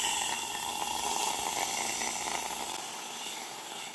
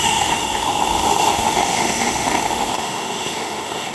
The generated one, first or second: second